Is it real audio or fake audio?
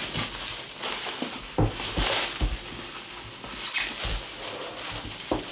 real